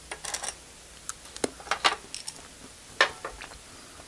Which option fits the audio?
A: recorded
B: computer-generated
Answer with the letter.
A